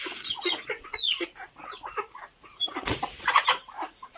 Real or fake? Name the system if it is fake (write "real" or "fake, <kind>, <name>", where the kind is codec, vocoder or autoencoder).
fake, vocoder, Vocos